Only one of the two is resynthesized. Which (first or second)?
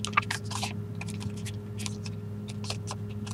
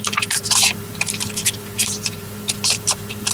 second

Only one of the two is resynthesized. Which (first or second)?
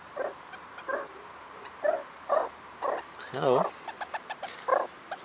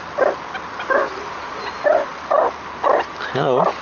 first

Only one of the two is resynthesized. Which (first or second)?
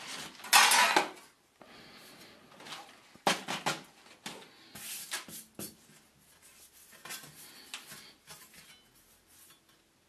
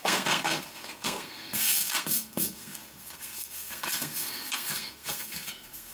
second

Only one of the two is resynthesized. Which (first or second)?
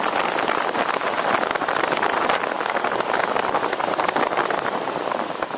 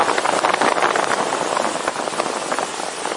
first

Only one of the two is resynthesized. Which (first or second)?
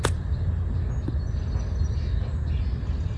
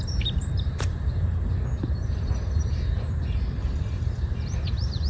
second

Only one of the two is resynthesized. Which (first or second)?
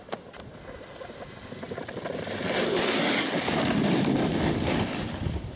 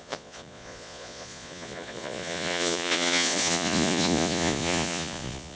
second